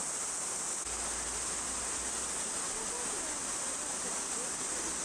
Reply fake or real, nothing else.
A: real